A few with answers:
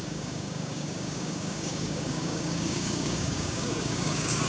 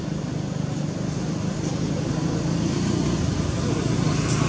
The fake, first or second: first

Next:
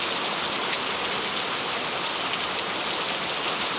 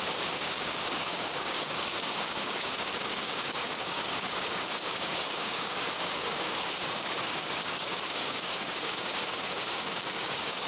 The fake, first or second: second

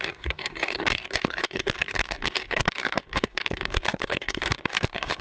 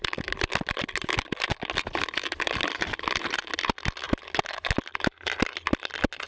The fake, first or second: first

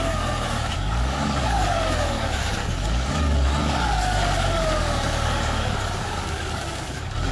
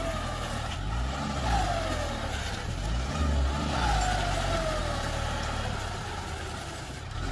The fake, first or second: first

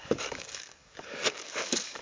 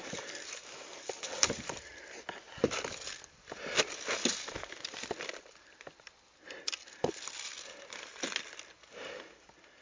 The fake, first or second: first